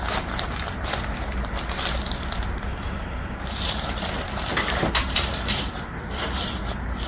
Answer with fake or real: fake